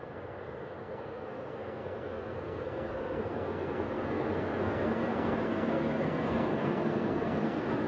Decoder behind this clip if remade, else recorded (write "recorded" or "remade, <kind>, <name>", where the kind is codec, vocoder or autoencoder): remade, codec, SNAC